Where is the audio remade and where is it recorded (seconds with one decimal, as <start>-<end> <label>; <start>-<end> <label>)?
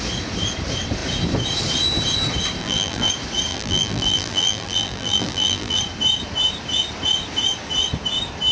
0.0-2.6 recorded; 2.6-3.1 remade; 3.1-3.5 recorded; 3.5-5.8 remade; 5.8-8.5 recorded